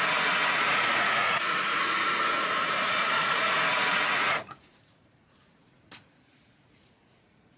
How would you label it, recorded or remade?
remade